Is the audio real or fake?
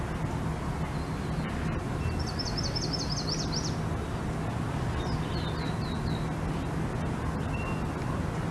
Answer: real